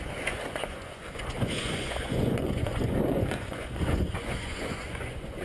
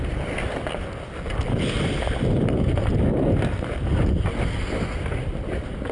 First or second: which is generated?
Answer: first